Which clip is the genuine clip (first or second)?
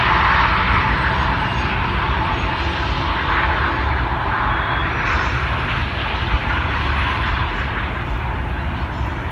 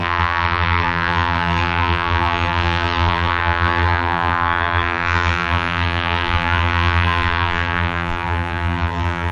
first